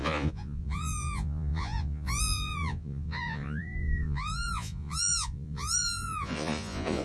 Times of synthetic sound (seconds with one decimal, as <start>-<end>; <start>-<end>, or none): 0.0-7.0